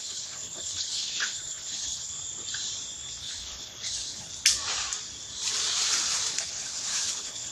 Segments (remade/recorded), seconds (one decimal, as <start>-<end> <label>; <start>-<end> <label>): 0.0-2.1 remade; 2.1-3.2 recorded; 3.2-4.3 remade; 4.3-6.3 recorded; 6.3-7.5 remade

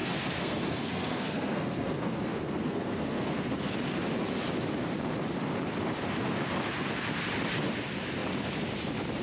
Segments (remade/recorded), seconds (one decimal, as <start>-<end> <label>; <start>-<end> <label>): 0.0-3.7 remade; 3.7-9.2 recorded

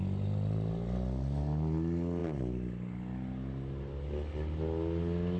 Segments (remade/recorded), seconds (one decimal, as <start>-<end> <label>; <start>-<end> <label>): 0.0-5.4 recorded

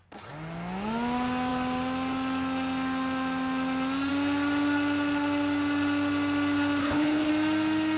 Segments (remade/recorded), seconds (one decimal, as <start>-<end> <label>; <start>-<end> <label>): 0.0-6.8 recorded; 6.8-7.3 remade; 7.3-8.0 recorded